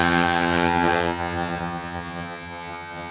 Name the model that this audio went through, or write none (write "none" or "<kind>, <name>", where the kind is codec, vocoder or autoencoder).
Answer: vocoder, HiFi-GAN